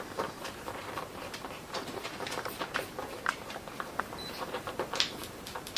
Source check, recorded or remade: remade